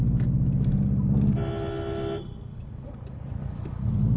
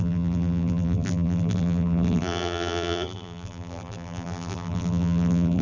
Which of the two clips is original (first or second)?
first